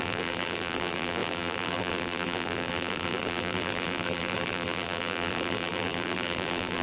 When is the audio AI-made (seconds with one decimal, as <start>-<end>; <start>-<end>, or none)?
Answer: 0.0-6.8